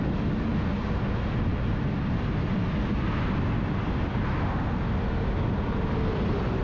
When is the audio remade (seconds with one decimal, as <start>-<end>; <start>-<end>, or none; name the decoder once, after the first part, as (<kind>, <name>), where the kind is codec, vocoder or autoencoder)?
none